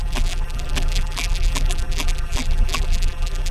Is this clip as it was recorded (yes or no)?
no